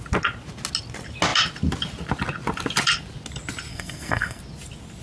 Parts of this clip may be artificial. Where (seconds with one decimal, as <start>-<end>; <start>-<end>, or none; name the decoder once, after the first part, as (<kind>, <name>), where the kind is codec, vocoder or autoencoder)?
3.7-4.4 (codec, SNAC)